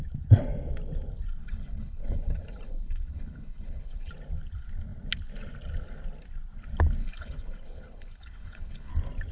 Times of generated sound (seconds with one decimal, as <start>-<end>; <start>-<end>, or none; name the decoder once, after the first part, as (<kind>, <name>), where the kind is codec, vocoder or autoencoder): 1.4-4.1 (codec, HILCodec); 7.0-8.9